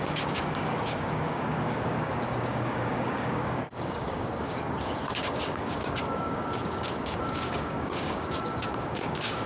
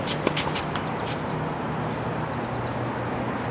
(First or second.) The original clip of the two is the second